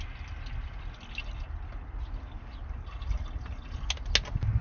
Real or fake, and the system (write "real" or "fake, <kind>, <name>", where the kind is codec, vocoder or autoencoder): real